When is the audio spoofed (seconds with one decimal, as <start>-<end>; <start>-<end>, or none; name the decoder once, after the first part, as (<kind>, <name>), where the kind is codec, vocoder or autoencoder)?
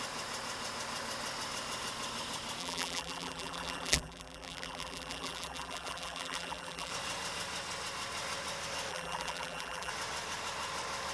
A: 2.6-6.9 (vocoder, BigVGAN v2); 8.9-9.9